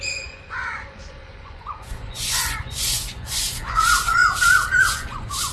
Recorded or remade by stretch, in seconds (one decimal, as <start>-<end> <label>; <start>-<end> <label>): 0.0-4.2 remade; 4.2-4.8 recorded; 4.8-5.5 remade